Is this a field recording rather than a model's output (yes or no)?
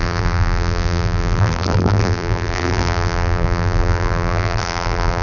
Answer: no